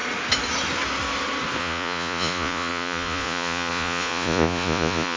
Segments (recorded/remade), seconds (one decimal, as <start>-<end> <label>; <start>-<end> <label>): 0.0-1.6 recorded; 1.6-5.2 remade